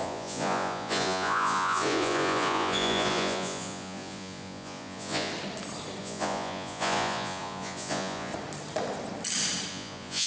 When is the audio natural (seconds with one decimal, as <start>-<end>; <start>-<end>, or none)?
5.3-6.0; 8.3-9.7